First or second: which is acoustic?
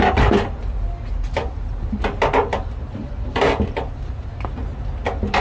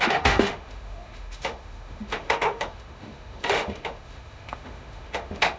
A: first